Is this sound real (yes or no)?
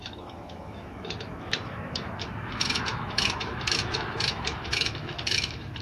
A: no